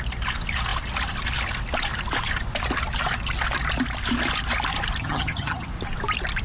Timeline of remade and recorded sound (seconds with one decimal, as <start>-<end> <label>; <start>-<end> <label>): 0.0-5.0 recorded; 5.0-5.7 remade; 5.7-6.4 recorded